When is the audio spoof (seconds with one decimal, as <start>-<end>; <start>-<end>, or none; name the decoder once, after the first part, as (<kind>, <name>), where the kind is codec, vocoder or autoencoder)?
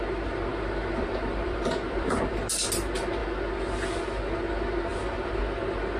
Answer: 0.5-2.3 (vocoder, BigVGAN v2); 4.9-5.4